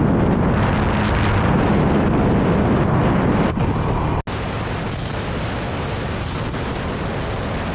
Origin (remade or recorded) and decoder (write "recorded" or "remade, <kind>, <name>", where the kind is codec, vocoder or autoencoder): recorded